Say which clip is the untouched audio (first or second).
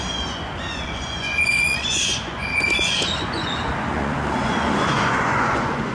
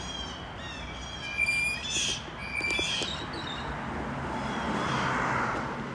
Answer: second